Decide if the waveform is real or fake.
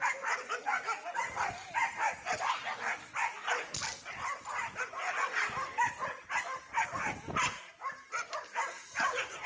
real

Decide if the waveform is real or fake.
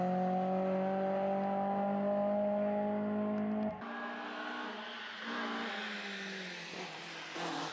real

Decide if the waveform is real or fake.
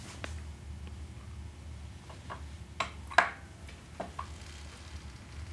real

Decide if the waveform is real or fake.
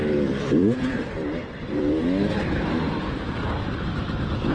fake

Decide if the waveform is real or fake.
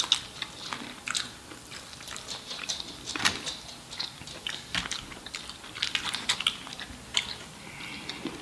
real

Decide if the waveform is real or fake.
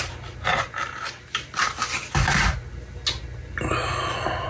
real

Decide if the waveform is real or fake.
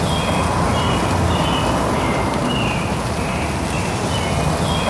real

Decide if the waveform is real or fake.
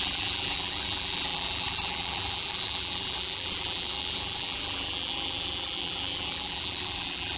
fake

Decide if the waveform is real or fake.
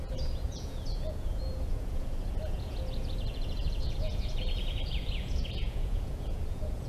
fake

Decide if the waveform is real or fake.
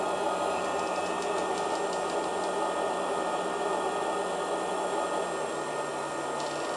real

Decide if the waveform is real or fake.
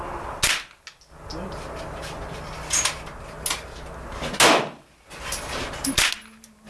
real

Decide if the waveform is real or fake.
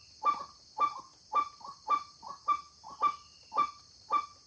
real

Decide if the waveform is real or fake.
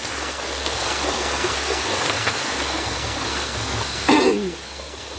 fake